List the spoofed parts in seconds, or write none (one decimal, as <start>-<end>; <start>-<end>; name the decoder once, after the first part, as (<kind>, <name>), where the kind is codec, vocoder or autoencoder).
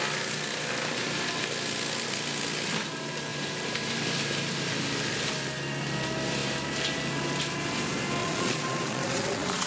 8.2-9.7 (vocoder, Vocos)